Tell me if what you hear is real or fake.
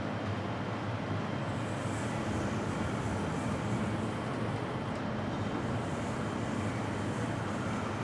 real